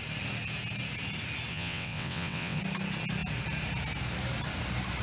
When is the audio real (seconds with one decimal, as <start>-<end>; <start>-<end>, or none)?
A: 0.0-1.5; 2.6-5.0